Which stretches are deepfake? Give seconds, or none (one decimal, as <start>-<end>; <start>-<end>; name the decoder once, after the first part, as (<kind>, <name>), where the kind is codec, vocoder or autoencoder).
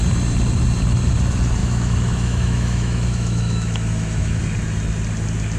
1.6-4.4 (autoencoder, DAC-VAE)